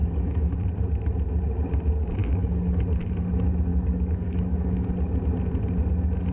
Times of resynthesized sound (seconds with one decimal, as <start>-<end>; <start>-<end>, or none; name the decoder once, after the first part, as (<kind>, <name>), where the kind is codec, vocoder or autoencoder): 0.0-0.5 (codec, DAC); 2.2-2.8; 3.7-4.9